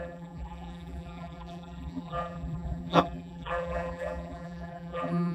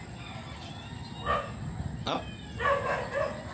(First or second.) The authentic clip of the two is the second